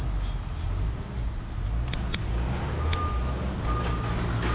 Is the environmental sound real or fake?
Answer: real